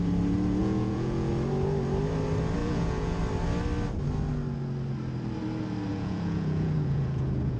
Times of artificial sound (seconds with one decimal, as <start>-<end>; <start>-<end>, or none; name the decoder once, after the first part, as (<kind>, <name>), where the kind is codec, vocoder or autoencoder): 0.6-1.3 (vocoder, Vocos); 2.6-3.2; 5.9-7.6